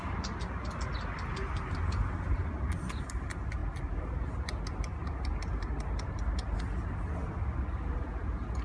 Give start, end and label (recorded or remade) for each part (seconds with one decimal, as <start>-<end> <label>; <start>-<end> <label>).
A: 0.0-8.6 recorded

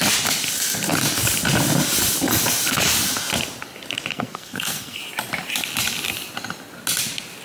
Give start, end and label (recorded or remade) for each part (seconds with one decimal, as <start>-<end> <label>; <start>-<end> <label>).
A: 0.0-4.1 recorded; 4.1-5.0 remade; 5.0-7.4 recorded

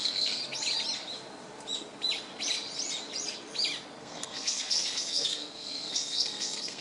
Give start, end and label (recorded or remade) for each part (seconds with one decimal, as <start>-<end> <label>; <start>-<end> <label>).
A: 0.0-0.4 remade; 0.4-4.0 recorded; 4.0-6.8 remade